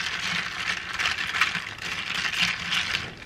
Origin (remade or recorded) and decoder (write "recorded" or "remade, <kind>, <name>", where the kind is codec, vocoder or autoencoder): recorded